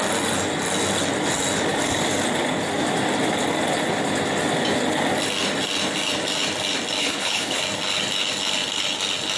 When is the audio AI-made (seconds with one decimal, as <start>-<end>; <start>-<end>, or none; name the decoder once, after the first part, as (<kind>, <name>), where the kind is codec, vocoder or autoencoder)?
7.0-7.6 (codec, HILCodec)